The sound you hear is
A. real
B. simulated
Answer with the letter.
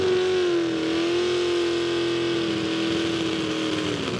A